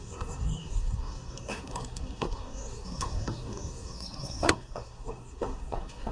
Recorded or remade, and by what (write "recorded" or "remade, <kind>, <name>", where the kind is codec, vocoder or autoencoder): remade, codec, SNAC